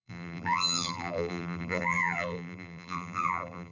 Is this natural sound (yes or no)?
no